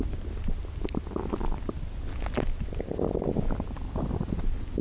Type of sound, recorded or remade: recorded